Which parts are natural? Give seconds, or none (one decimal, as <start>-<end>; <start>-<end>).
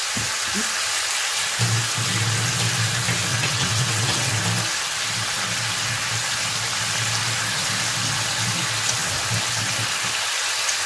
0.0-3.3; 4.3-10.9